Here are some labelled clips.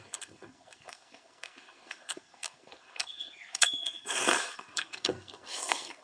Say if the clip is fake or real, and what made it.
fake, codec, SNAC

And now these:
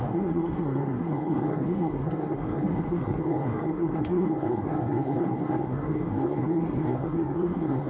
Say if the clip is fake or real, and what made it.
fake, codec, SNAC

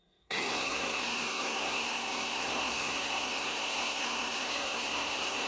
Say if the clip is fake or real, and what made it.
fake, codec, SNAC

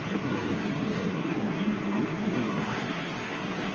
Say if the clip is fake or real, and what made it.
fake, codec, SNAC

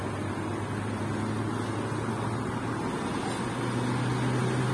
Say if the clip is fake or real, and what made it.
real